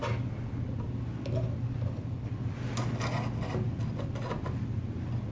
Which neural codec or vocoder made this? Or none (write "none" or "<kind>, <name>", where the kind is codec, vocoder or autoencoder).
none